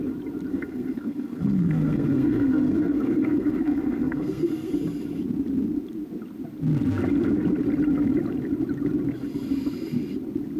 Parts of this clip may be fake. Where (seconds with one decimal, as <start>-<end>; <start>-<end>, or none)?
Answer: 0.5-4.7